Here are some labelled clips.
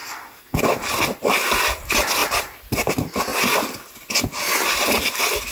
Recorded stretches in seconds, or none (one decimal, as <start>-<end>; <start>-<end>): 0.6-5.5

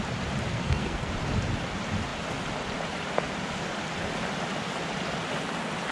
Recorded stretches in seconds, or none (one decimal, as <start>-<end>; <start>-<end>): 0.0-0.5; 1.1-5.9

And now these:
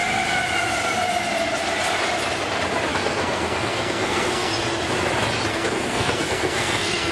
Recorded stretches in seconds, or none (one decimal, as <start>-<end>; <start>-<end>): 0.0-2.9; 4.5-5.5

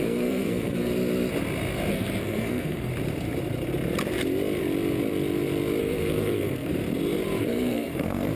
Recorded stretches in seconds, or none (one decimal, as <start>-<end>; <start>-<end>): 0.9-1.9; 2.9-5.8; 6.7-7.4

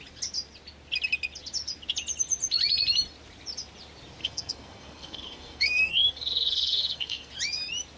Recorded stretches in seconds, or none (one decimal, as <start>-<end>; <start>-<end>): 0.0-4.2; 7.3-8.0

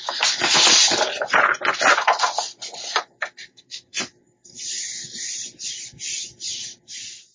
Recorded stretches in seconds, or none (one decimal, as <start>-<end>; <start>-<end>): 0.0-3.5; 4.1-7.3